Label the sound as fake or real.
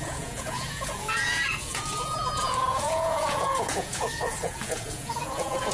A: fake